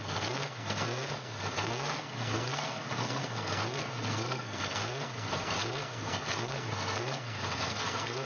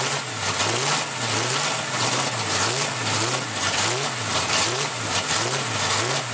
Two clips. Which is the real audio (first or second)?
second